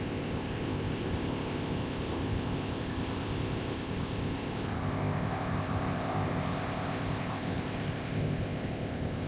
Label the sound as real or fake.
fake